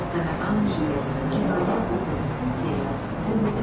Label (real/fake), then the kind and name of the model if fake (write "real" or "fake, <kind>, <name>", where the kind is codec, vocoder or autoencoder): real